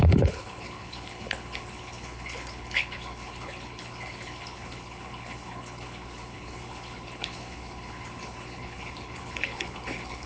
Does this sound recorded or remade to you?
remade